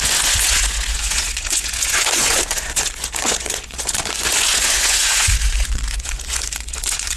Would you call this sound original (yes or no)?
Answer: no